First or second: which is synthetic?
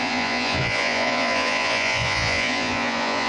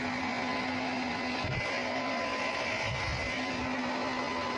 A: first